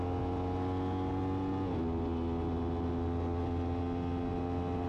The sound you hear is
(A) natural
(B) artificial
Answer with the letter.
A